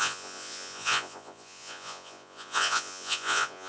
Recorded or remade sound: remade